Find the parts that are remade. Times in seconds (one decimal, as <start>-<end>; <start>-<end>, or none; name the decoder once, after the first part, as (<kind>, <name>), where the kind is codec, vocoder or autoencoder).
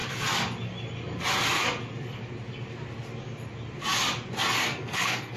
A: 4.6-5.4 (codec, SNAC)